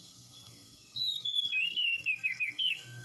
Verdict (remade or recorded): remade